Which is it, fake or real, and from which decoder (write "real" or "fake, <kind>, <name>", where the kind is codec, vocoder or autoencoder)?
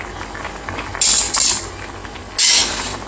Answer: real